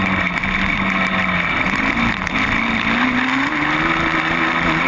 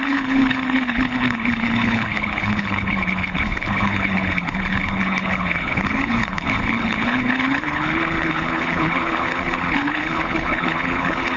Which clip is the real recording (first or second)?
first